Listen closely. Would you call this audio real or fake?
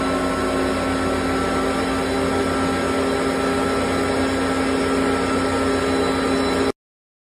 real